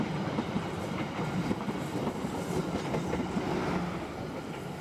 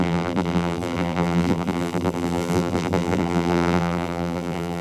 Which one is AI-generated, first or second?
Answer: second